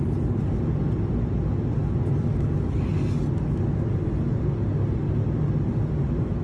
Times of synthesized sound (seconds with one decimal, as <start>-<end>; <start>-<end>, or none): none